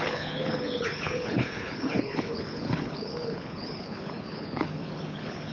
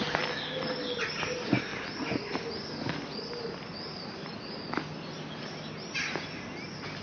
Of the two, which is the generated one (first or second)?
first